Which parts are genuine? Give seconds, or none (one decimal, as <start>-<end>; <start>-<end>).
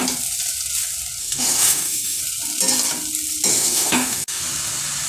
0.0-1.2; 2.2-3.5; 4.4-5.1